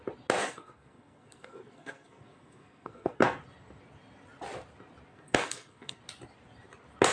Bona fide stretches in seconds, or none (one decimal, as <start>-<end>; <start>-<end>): 0.0-0.4; 3.4-5.1; 6.0-7.1